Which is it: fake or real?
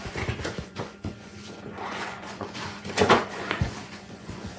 fake